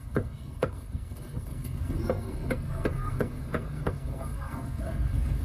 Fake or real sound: fake